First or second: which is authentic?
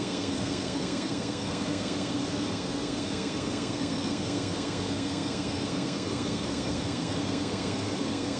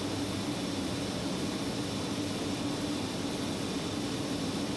second